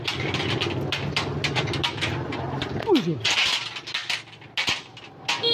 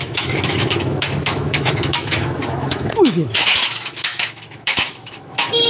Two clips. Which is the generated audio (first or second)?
second